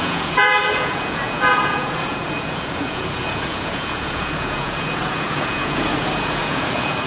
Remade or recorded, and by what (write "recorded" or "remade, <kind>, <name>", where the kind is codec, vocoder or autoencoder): remade, vocoder, Vocos